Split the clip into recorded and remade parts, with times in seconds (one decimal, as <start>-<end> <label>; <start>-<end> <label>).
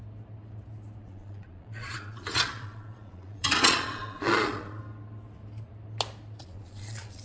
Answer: 0.0-1.0 recorded; 1.0-4.8 remade; 4.8-6.4 recorded; 6.4-7.2 remade